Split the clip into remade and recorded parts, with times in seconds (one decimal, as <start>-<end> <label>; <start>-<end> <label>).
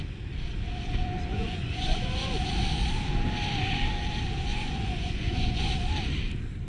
0.0-1.3 recorded; 1.3-2.3 remade; 2.3-4.5 recorded; 4.5-5.7 remade; 5.7-6.7 recorded